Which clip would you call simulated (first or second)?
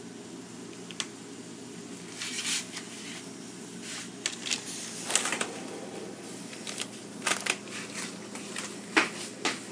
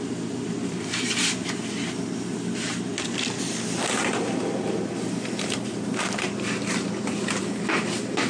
second